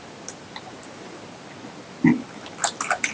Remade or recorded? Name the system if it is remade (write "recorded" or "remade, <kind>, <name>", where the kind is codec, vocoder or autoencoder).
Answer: recorded